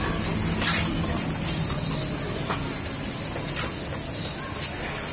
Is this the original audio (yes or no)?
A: yes